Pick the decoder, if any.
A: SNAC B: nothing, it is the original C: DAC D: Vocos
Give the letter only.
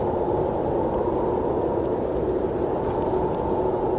B